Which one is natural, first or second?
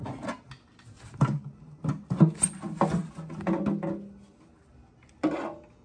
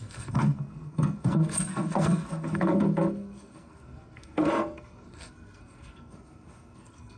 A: first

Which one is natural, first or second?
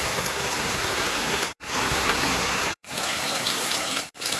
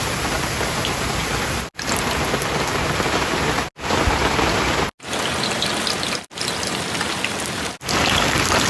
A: second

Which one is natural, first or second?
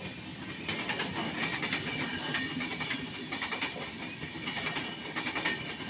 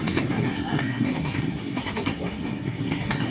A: first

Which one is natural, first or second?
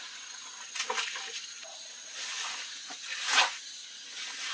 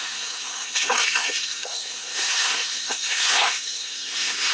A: first